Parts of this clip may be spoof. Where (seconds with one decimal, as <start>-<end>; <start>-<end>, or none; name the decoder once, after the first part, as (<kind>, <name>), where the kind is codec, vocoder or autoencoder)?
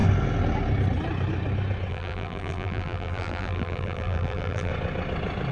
1.9-4.7 (vocoder, BigVGAN v2)